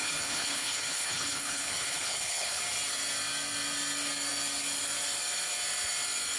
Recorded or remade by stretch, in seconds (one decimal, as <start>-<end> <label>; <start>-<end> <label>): 0.0-2.6 remade; 2.6-6.4 recorded